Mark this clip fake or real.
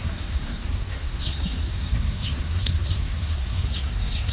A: fake